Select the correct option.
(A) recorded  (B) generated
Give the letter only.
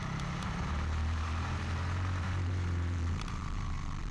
B